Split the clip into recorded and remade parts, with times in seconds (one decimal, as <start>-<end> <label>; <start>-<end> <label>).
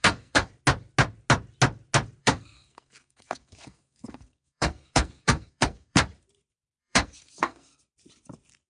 0.0-0.5 remade; 0.5-2.2 recorded; 2.2-6.0 remade; 6.0-6.8 recorded; 6.8-7.8 remade; 7.8-8.7 recorded